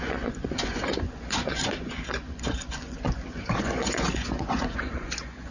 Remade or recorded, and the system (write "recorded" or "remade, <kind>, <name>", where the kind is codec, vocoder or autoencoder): remade, vocoder, Vocos